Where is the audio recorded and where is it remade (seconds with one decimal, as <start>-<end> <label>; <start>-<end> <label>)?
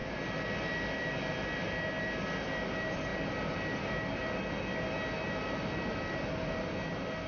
0.0-7.3 recorded